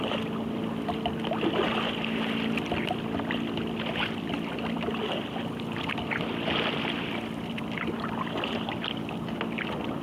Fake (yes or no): no